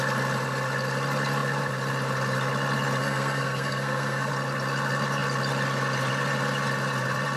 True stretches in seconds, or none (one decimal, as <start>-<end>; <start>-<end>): 0.0-3.0; 4.3-7.4